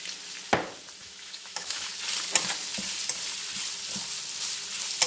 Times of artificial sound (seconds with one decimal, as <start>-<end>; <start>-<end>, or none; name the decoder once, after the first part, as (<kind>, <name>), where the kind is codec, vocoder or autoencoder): 1.0-1.9 (autoencoder, DAC-VAE)